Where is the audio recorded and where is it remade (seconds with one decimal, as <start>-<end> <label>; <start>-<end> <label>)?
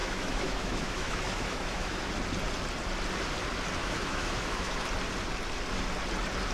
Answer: 0.0-2.1 remade; 2.1-3.8 recorded; 3.8-4.7 remade; 4.7-6.5 recorded